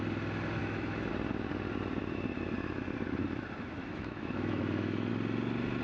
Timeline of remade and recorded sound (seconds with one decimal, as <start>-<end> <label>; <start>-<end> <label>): 0.0-0.6 recorded; 0.6-1.1 remade; 1.1-3.8 recorded; 3.8-5.1 remade; 5.1-5.8 recorded